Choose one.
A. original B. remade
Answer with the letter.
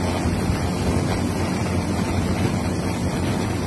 A